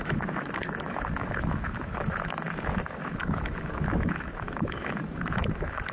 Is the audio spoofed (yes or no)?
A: yes